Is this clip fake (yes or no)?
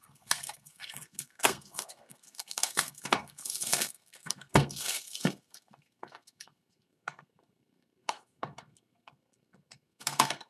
yes